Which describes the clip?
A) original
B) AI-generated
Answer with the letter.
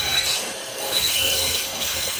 B